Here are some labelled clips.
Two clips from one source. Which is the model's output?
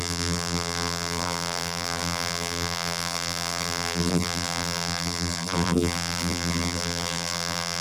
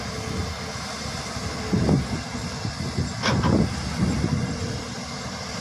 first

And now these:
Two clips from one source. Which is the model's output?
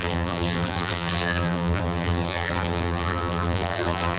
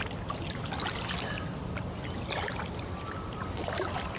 first